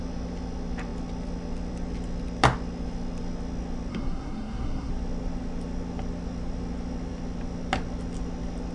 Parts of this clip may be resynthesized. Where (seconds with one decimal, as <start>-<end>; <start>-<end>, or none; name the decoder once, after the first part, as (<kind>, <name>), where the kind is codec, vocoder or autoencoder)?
3.9-4.9 (codec, SNAC)